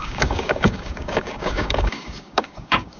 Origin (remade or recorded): remade